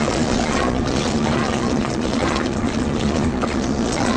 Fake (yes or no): yes